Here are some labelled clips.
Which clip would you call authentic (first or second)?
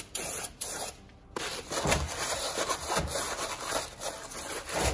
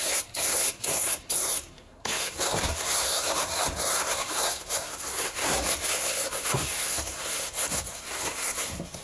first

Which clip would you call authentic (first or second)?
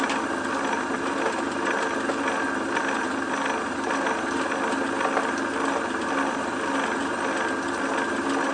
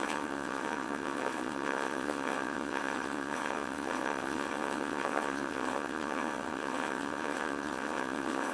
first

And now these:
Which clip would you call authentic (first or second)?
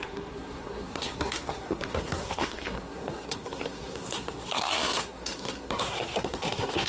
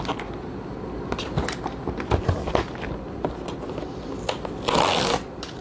second